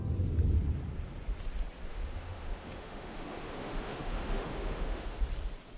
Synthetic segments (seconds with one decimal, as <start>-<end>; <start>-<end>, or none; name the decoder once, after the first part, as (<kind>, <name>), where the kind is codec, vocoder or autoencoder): 1.9-5.2 (autoencoder, DAC-VAE)